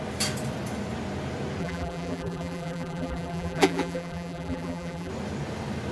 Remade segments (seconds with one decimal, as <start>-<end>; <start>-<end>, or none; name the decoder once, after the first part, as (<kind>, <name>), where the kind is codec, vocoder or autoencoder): 1.6-5.1 (vocoder, BigVGAN v2)